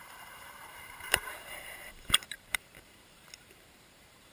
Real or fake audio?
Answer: fake